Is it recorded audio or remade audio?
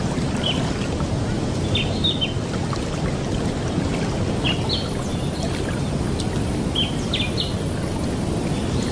recorded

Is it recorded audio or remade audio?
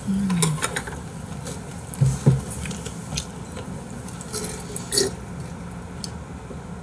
recorded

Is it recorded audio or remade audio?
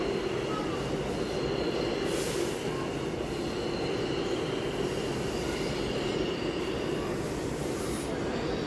recorded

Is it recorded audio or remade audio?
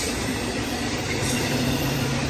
remade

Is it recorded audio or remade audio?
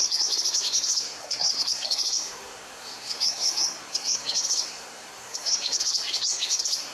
remade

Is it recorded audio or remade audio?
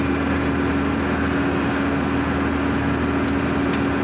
recorded